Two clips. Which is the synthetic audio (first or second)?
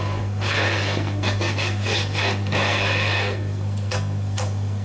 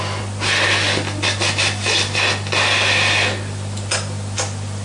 first